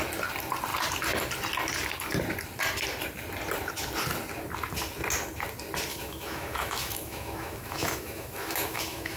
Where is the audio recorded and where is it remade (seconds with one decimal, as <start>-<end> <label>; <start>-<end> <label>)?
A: 0.0-5.9 recorded; 5.9-9.2 remade